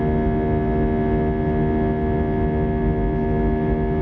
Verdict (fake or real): real